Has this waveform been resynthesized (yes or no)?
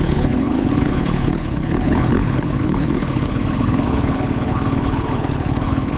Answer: yes